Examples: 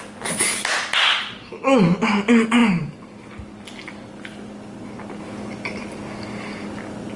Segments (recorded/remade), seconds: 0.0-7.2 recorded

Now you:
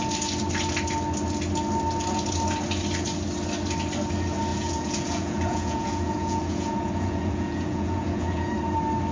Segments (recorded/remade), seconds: 0.0-4.5 recorded; 4.5-8.5 remade; 8.5-9.1 recorded